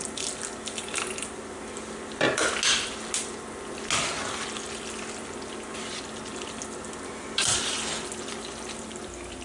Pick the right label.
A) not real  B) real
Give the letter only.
B